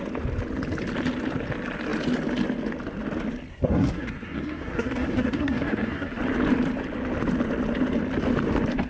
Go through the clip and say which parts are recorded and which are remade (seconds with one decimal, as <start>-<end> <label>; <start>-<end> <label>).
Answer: 0.0-3.5 recorded; 3.5-6.2 remade; 6.2-8.9 recorded